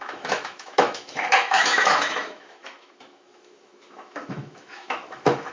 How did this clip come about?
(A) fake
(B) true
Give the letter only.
A